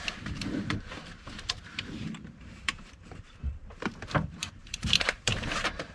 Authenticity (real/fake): fake